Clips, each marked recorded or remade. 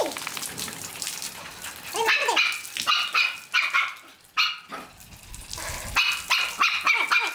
recorded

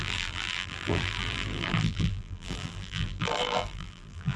remade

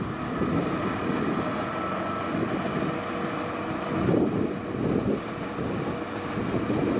recorded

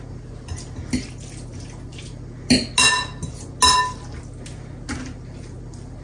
recorded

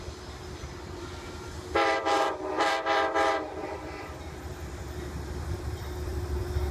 remade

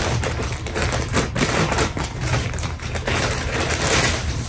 remade